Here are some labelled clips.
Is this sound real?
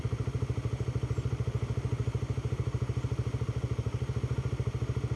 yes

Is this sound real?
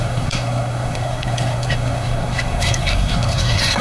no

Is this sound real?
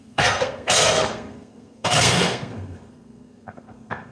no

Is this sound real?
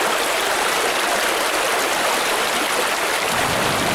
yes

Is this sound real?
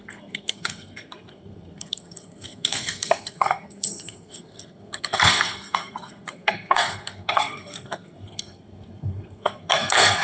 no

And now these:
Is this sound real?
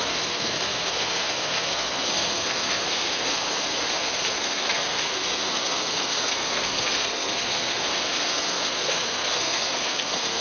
no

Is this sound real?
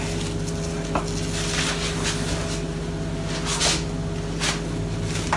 yes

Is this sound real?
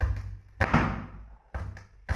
yes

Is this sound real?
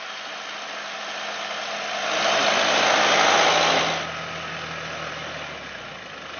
yes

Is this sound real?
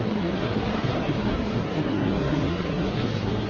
no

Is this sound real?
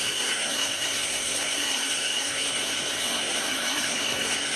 no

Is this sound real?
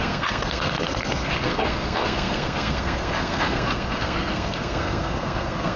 no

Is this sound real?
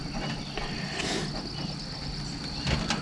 yes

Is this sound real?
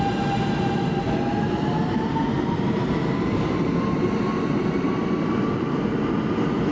yes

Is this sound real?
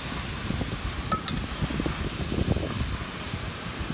yes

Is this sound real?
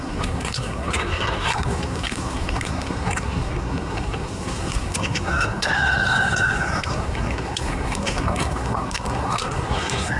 no